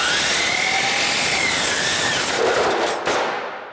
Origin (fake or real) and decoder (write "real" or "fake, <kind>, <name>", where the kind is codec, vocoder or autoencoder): real